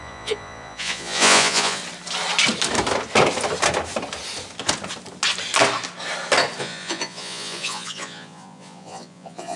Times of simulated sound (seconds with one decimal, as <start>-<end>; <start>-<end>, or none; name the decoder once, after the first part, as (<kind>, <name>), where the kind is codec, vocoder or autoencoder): 0.0-1.8 (vocoder, Vocos); 6.6-9.6